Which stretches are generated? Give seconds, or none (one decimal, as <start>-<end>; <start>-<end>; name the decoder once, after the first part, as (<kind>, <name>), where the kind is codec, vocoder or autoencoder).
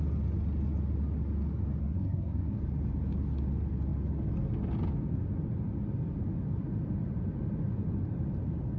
1.8-2.6 (codec, SNAC)